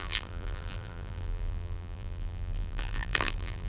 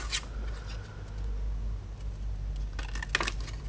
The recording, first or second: second